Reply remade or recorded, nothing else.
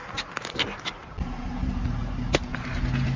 recorded